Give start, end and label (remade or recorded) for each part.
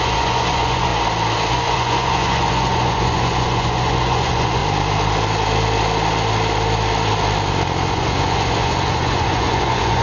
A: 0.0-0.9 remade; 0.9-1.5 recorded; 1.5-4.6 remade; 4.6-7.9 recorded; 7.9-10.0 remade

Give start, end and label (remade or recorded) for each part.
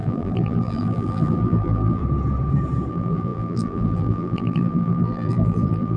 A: 0.0-2.0 remade; 2.0-2.9 recorded; 2.9-6.0 remade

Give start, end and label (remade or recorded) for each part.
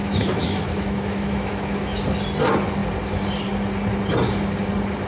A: 0.0-2.0 remade; 2.0-5.1 recorded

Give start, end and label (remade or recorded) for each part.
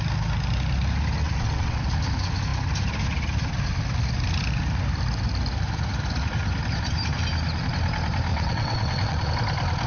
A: 0.0-1.2 recorded; 1.2-1.8 remade; 1.8-8.3 recorded; 8.3-9.3 remade; 9.3-9.9 recorded